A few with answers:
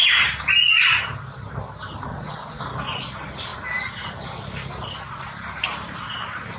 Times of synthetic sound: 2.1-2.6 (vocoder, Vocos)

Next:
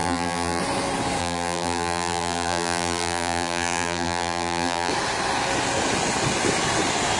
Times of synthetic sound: 0.0-0.6 (vocoder, BigVGAN v2); 1.2-4.9

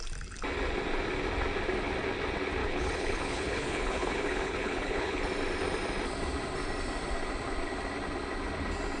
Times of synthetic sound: 2.6-5.2 (codec, HILCodec)

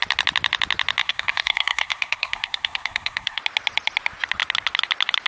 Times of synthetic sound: 1.0-3.4 (codec, SNAC)

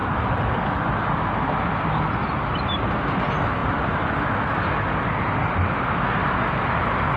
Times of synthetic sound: 0.0-0.8 (vocoder, BigVGAN v2); 3.6-4.2

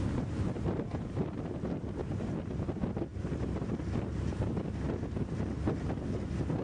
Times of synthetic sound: 2.0-2.7 (vocoder, BigVGAN v2); 3.1-3.8

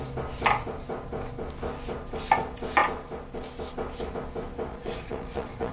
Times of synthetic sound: 4.7-5.7 (vocoder, Vocos)

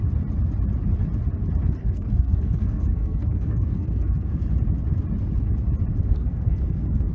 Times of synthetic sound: 1.8-4.5 (codec, SNAC); 5.9-7.1